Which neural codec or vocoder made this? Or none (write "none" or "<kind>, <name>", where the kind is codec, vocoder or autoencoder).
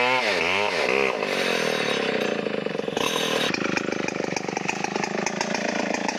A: none